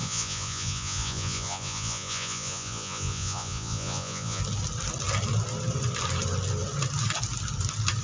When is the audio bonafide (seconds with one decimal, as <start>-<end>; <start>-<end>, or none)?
4.4-8.0

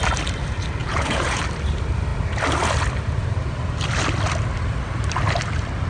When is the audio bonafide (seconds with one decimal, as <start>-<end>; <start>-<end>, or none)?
0.0-0.8; 1.4-5.9